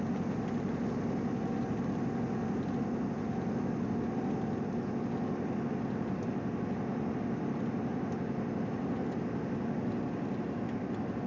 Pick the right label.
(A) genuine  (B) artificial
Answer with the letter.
A